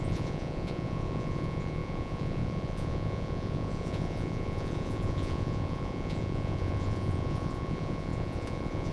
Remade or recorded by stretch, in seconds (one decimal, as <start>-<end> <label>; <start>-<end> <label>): 0.0-8.9 remade